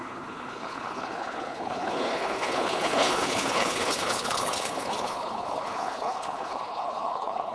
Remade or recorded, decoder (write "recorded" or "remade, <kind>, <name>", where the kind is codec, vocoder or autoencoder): remade, codec, HILCodec